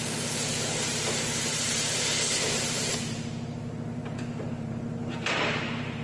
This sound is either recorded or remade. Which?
remade